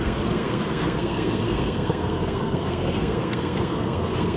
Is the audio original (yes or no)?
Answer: no